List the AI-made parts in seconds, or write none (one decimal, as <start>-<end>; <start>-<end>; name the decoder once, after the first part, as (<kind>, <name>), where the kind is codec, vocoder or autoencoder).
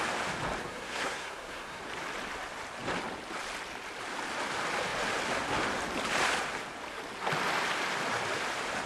0.6-1.8 (codec, SNAC)